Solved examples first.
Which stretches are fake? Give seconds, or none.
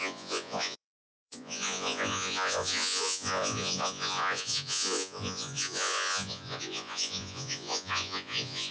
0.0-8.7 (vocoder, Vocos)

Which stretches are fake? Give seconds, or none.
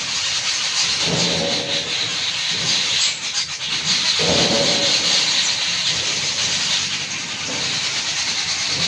none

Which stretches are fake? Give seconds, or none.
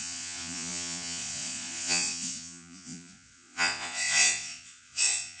0.0-5.4 (vocoder, Vocos)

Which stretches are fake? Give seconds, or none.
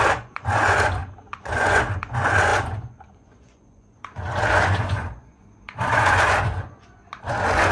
0.0-7.7 (vocoder, Vocos)